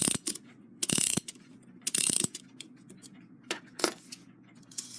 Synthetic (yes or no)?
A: yes